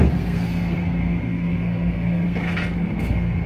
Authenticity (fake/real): fake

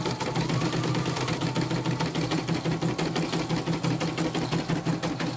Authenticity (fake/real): real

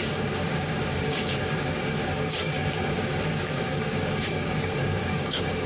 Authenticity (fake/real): fake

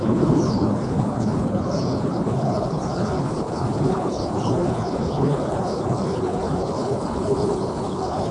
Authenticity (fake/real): fake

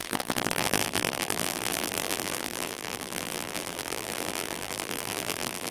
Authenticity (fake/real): fake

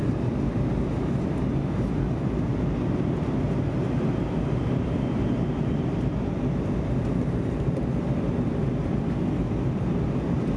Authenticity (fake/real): real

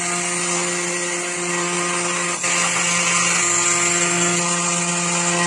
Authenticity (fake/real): real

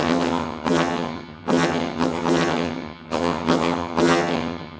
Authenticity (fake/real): fake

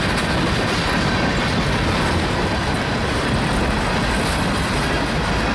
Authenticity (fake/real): real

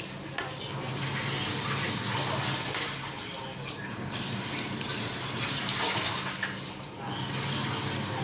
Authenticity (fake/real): real